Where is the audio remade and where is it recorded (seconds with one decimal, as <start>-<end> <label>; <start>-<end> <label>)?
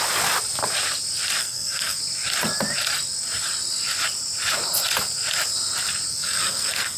0.0-1.4 recorded; 1.4-2.0 remade; 2.0-6.1 recorded; 6.1-7.0 remade